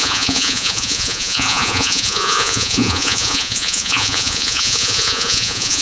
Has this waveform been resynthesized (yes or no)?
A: yes